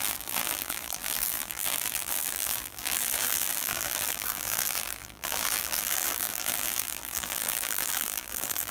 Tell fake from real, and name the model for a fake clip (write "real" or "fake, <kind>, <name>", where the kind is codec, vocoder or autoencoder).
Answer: fake, vocoder, BigVGAN v2